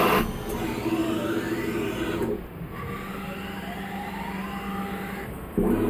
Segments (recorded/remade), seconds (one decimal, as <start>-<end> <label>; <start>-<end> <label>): 0.0-5.9 recorded